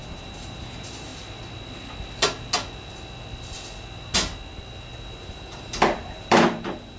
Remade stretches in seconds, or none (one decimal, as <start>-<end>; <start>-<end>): 0.0-1.1; 5.2-7.0